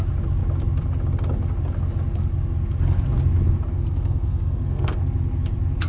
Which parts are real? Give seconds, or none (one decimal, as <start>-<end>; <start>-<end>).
0.0-3.7; 5.0-5.9